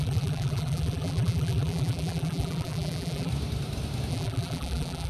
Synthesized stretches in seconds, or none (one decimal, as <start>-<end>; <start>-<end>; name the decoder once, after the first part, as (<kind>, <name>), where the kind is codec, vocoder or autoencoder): 0.0-3.3 (vocoder, BigVGAN v2); 4.1-5.1